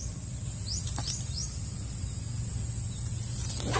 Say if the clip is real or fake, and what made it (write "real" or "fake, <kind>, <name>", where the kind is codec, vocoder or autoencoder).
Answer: real